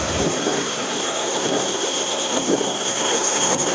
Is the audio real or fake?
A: fake